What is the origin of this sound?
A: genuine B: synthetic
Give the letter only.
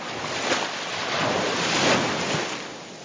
A